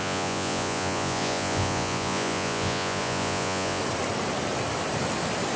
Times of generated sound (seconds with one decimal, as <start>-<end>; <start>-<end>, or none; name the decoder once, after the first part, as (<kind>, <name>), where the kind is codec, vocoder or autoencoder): 0.0-3.8 (vocoder, Vocos)